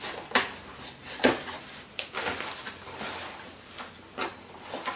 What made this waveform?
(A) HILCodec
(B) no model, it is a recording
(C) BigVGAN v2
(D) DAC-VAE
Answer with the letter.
B